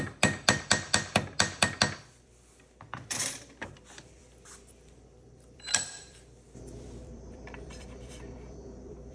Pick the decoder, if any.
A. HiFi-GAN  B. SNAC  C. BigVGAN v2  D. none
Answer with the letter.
C